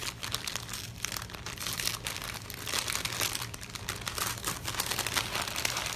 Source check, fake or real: real